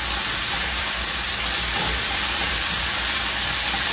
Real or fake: fake